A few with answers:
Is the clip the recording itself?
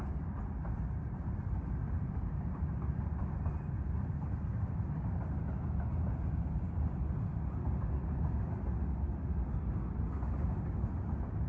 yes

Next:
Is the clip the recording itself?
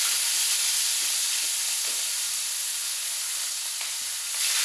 yes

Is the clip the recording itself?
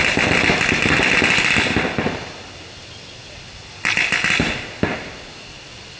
yes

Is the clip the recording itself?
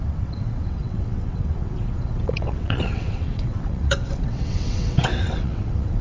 no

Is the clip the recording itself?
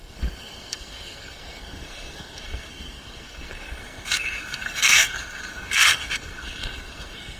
no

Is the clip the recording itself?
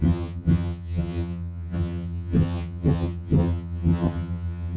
no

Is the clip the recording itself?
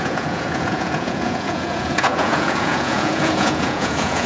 no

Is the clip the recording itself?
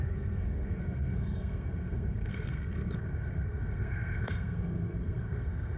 no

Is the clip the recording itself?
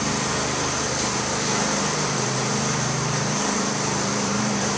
no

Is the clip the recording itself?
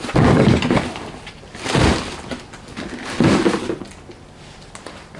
yes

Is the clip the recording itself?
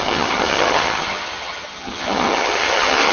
no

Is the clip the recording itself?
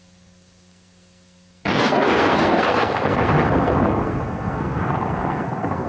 no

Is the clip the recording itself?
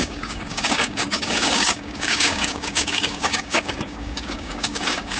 no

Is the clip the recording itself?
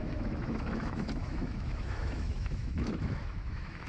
no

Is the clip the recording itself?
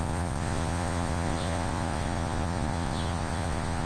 no